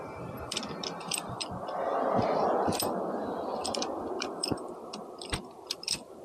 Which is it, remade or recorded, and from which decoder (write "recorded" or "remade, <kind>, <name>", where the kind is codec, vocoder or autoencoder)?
remade, vocoder, BigVGAN v2